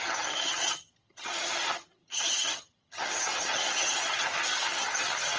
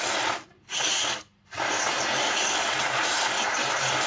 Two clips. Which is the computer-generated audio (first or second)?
first